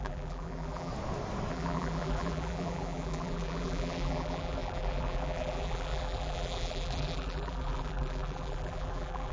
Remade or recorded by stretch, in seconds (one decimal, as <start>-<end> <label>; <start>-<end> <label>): 0.0-0.9 remade; 0.9-1.5 recorded; 1.5-9.3 remade